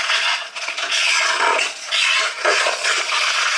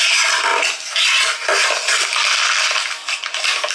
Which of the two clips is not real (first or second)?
first